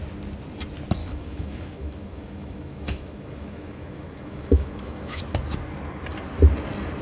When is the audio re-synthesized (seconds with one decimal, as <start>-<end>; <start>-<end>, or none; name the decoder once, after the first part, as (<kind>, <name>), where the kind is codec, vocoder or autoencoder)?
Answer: 1.0-5.2 (autoencoder, DAC-VAE)